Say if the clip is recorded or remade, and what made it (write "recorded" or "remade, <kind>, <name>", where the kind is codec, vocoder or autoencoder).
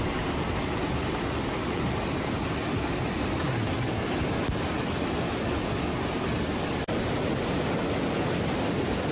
recorded